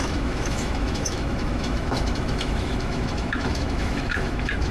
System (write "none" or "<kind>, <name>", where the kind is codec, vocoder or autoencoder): autoencoder, DAC-VAE